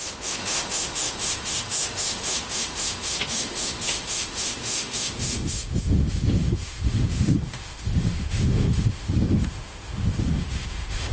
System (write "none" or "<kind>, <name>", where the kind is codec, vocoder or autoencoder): autoencoder, DAC-VAE